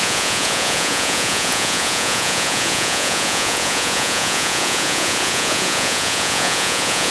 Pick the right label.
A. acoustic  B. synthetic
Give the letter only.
B